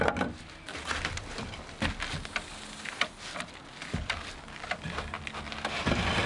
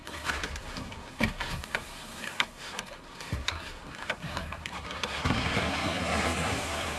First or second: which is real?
first